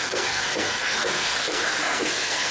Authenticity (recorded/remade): remade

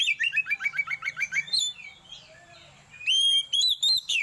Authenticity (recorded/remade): remade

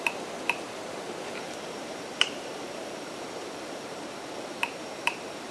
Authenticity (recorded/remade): remade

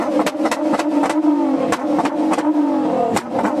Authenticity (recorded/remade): recorded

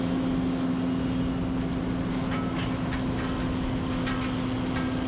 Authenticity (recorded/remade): recorded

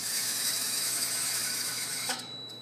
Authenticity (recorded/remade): remade